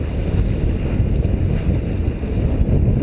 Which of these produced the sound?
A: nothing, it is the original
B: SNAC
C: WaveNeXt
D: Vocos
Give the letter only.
A